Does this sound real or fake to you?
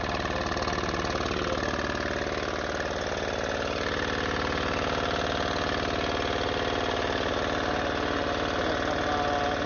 real